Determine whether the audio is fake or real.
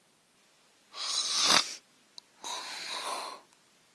real